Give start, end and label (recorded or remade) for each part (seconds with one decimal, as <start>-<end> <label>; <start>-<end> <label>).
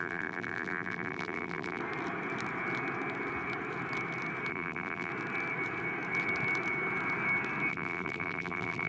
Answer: 0.0-1.8 remade; 1.8-4.5 recorded; 4.5-5.1 remade; 5.1-7.7 recorded; 7.7-8.9 remade